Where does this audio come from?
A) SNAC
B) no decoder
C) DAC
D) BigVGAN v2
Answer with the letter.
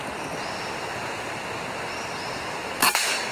B